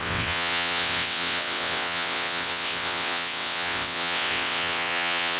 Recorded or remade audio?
remade